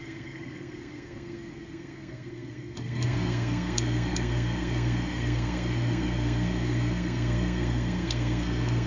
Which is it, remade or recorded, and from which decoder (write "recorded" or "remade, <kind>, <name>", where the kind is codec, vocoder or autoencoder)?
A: remade, codec, SNAC